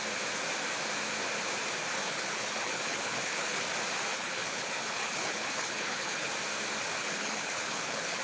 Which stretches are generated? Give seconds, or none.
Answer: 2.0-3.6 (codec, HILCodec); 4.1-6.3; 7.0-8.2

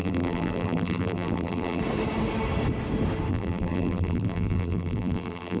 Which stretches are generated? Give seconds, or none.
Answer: 0.0-1.8 (vocoder, BigVGAN v2); 3.3-5.6

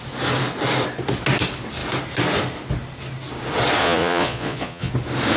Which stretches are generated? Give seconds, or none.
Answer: 3.8-4.9 (vocoder, Vocos)

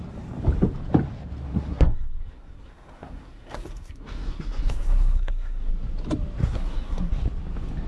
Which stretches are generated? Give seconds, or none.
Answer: 1.5-5.7 (codec, SNAC); 6.4-7.1